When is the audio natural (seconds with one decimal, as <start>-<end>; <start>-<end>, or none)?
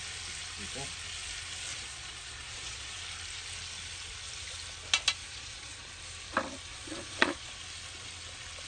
0.0-1.7; 3.0-5.2; 5.9-6.7; 7.5-8.7